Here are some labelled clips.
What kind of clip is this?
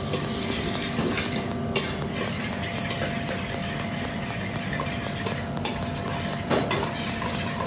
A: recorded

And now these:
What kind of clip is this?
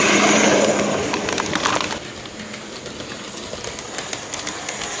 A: recorded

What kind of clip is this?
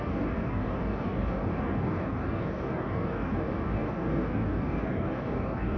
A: remade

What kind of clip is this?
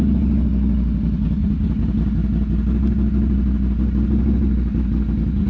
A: recorded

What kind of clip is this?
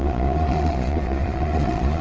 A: remade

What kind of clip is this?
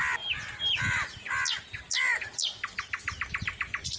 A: recorded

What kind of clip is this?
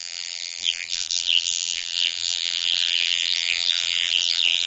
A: remade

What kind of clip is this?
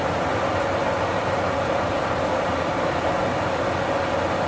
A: recorded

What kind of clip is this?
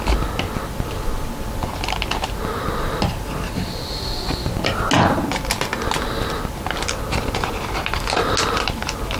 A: recorded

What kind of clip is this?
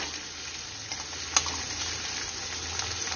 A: recorded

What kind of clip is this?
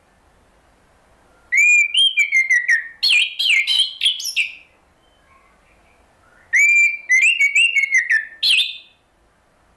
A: recorded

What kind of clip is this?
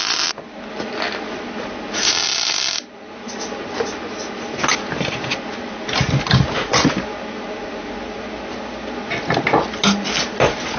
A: recorded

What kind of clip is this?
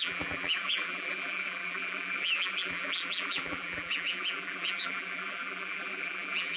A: remade